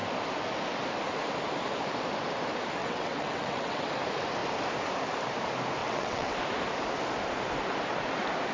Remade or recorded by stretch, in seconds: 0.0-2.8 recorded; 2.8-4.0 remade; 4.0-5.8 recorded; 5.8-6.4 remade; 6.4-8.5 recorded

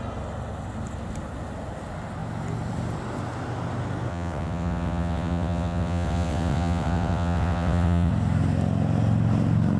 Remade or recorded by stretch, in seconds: 0.0-4.1 recorded; 4.1-8.1 remade; 8.1-9.8 recorded